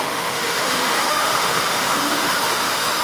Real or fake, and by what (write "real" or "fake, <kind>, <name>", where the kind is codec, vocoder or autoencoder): fake, autoencoder, DAC-VAE